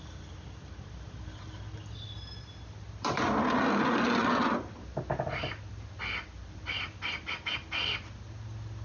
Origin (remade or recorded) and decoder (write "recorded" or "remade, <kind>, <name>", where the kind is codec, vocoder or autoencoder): recorded